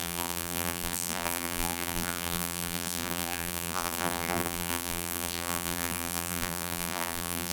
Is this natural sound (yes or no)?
no